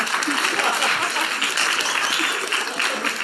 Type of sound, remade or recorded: recorded